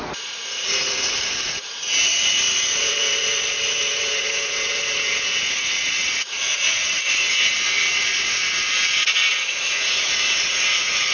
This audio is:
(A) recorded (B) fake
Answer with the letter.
B